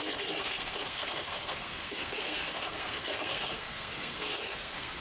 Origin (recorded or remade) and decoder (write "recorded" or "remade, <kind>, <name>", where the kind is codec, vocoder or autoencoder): remade, codec, SNAC